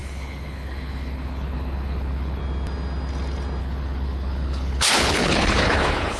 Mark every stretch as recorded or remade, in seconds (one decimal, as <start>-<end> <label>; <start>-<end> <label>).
0.0-2.4 remade; 2.4-3.6 recorded; 3.6-6.2 remade